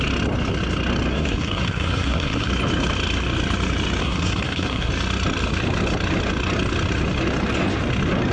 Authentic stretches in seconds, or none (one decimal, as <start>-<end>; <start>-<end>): 0.0-1.1; 2.5-4.0; 4.9-8.3

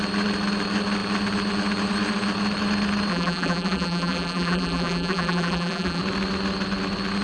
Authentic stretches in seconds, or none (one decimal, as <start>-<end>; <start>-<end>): 0.0-3.1; 6.0-7.2

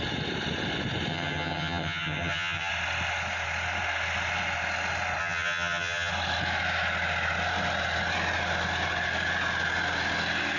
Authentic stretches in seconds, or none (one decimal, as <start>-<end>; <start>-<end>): 0.0-1.1; 2.7-5.2; 6.1-10.6

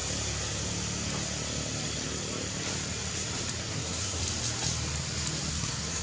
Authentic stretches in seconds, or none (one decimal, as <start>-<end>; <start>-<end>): 0.0-3.6; 4.2-5.5

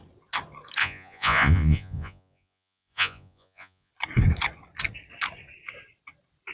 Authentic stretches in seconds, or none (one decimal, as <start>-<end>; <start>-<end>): 0.0-0.8; 3.9-6.5

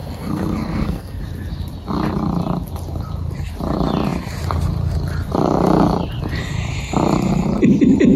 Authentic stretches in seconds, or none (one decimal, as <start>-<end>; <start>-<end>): 1.2-8.2

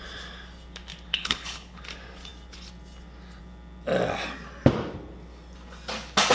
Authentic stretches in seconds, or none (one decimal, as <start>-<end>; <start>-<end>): 0.0-1.1; 1.8-6.3

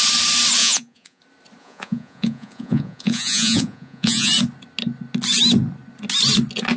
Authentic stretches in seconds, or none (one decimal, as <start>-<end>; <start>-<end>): 0.0-0.6; 1.2-1.6; 4.3-6.8